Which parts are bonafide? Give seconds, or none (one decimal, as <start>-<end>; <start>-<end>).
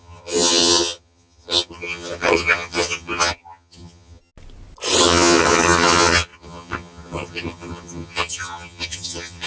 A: 4.3-5.0